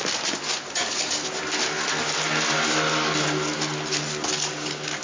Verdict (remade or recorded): recorded